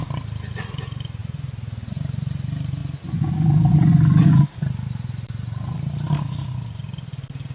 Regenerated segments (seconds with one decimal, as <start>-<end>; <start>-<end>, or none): none